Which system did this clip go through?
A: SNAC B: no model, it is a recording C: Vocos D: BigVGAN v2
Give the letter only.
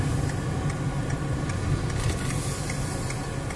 B